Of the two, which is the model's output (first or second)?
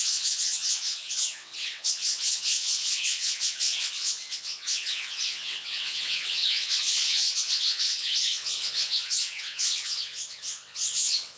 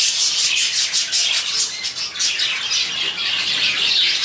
first